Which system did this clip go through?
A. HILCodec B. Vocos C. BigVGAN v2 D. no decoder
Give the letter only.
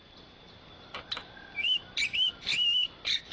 C